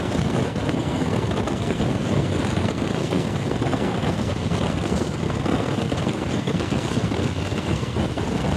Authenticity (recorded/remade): remade